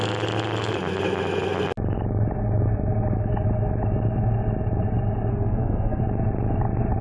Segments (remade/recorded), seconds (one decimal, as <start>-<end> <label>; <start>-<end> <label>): 0.0-5.3 recorded; 5.3-6.0 remade; 6.0-7.0 recorded